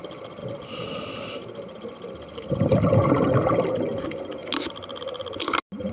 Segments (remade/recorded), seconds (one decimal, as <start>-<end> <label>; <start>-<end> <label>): 0.0-5.9 recorded